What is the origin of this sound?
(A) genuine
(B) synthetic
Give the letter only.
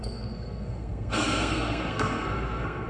B